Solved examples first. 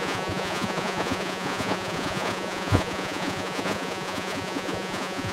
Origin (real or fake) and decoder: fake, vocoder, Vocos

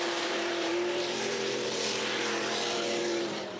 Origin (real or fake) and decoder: fake, vocoder, BigVGAN v2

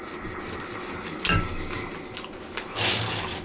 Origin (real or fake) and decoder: real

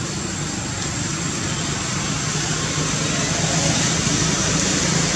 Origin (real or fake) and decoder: real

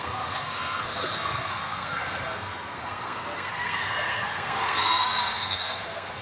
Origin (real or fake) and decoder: fake, codec, SNAC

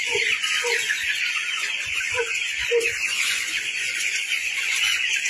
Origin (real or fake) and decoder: fake, vocoder, Vocos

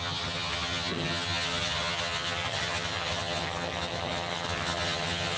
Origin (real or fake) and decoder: fake, vocoder, HiFi-GAN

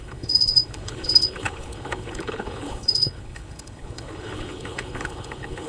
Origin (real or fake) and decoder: fake, codec, HILCodec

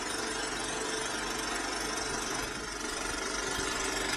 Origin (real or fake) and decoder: real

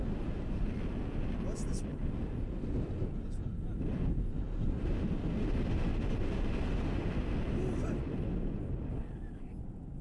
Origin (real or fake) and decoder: real